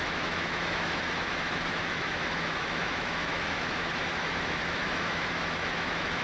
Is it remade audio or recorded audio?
remade